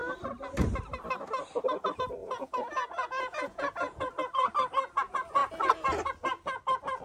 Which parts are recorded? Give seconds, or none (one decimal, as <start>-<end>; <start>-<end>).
0.0-2.2; 4.1-7.0